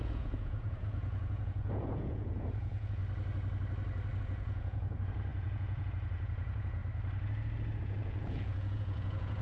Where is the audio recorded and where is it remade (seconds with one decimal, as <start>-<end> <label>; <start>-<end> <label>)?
0.0-3.0 remade; 3.0-4.2 recorded; 4.2-6.8 remade; 6.8-7.8 recorded; 7.8-9.4 remade